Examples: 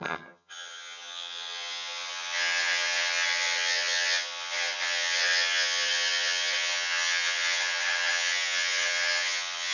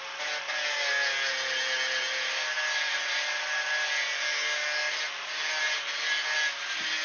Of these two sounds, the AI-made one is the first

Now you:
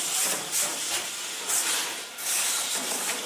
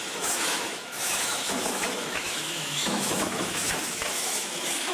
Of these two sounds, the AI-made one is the second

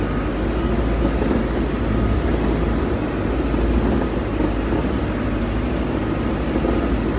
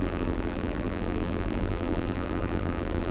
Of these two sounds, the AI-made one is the second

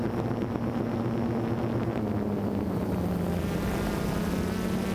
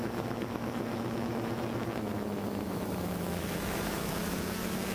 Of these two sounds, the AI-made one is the second